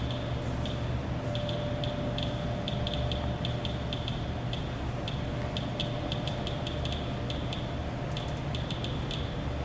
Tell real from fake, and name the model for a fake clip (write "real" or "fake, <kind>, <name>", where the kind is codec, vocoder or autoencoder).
real